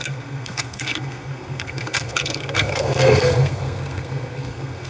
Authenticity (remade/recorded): remade